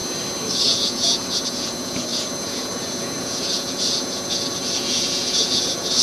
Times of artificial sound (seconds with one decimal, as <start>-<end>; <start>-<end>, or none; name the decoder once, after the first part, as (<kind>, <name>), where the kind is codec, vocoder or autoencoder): 0.6-6.0 (vocoder, Vocos)